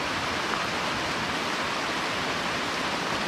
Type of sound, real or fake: real